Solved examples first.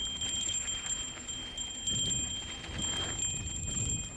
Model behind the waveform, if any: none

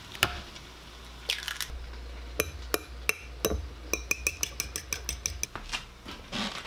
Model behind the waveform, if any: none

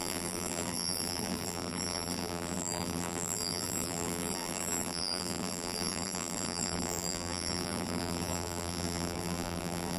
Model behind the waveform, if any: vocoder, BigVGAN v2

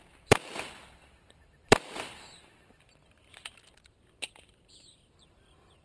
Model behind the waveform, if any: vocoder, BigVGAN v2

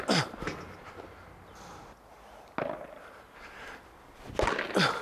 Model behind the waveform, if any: none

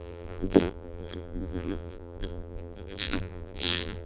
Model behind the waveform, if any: vocoder, BigVGAN v2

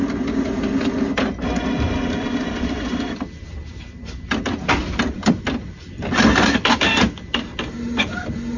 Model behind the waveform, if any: none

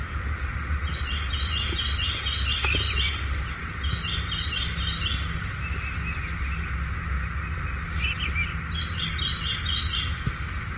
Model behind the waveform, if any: none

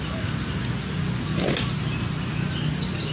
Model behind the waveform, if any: none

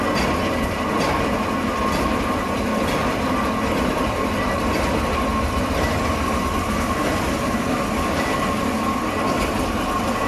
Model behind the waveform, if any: none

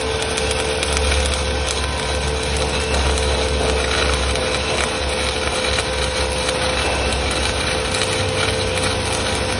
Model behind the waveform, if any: none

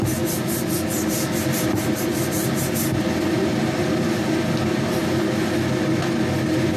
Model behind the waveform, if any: none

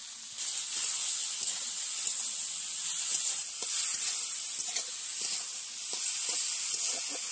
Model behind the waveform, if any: none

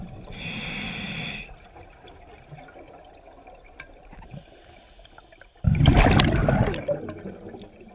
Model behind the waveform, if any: none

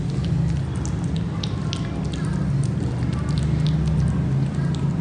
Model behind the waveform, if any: none